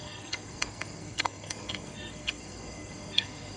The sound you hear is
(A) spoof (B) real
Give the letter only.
A